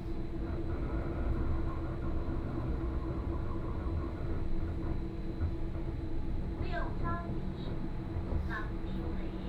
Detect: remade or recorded recorded